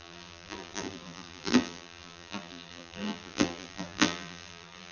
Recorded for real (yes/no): no